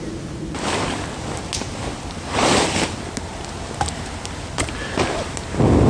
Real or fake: real